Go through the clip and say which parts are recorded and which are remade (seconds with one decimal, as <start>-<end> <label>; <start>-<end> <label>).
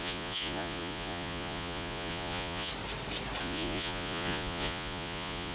0.0-2.7 remade; 2.7-3.4 recorded; 3.4-5.5 remade